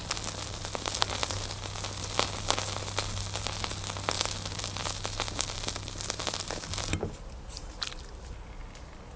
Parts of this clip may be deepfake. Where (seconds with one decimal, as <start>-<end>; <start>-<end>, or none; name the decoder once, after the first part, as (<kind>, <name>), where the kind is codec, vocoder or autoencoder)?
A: none